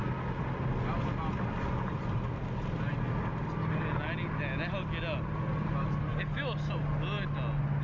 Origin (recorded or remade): recorded